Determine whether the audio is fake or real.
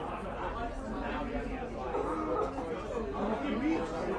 real